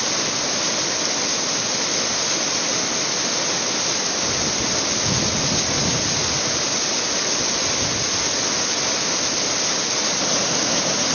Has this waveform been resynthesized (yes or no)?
no